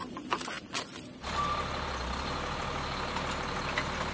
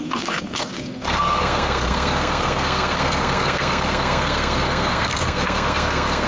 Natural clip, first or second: first